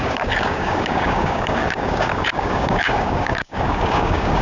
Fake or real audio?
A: fake